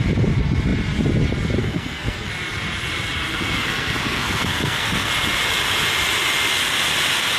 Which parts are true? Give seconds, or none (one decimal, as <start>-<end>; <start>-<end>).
0.0-1.6; 2.3-3.3; 5.1-7.4